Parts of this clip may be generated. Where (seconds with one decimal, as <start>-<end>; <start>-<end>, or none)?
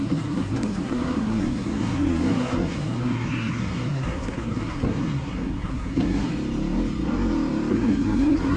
0.0-6.3; 7.7-8.6